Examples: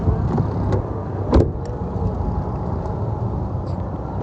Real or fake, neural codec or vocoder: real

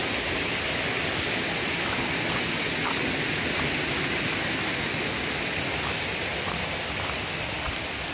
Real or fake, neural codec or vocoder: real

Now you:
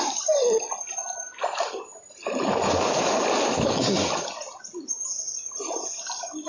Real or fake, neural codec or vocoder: real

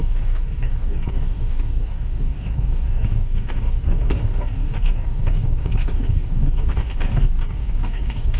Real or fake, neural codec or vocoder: fake, codec, DAC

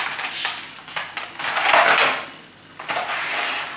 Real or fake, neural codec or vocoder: real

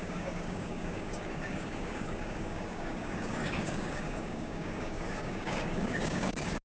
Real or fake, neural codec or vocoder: fake, codec, DAC